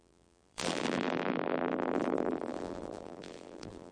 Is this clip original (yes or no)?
no